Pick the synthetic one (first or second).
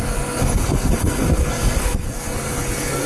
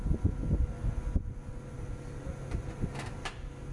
first